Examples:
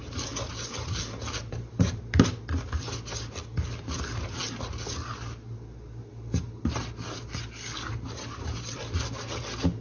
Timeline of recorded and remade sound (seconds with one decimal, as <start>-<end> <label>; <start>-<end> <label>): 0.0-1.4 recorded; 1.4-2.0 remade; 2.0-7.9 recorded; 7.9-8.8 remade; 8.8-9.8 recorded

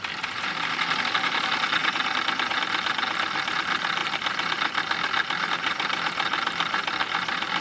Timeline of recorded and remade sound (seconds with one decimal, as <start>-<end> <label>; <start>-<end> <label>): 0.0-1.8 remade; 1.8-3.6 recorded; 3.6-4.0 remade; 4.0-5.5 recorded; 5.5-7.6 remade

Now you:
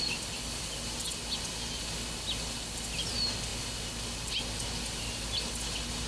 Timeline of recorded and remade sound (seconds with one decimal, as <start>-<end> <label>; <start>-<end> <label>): 0.0-6.1 recorded